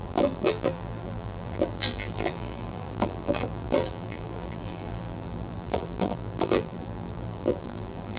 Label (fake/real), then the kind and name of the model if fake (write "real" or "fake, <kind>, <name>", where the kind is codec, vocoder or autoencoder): fake, vocoder, BigVGAN v2